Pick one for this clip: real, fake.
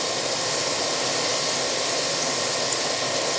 real